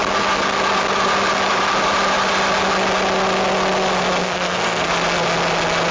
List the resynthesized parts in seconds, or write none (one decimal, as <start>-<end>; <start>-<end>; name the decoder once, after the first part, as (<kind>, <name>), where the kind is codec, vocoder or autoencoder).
4.2-4.9 (codec, SNAC)